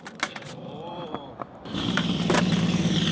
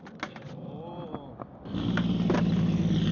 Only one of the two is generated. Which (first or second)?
first